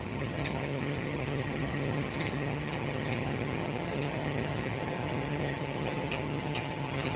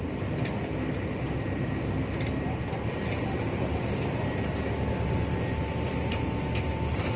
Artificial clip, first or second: first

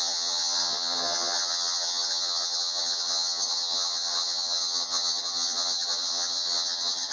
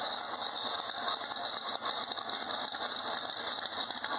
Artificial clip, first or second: first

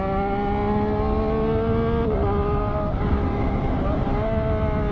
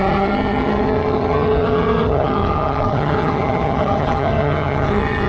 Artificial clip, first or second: second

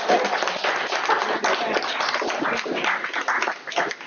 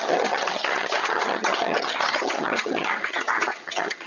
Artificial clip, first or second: second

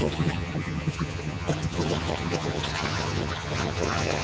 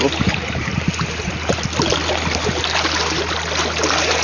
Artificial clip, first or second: first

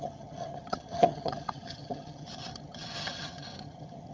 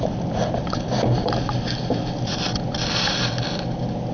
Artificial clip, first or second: first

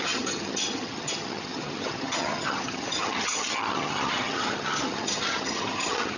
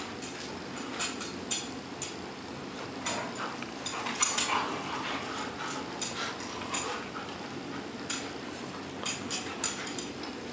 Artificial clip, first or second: first